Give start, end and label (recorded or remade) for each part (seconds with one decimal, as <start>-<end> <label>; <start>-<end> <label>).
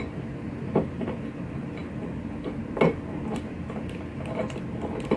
0.0-5.2 recorded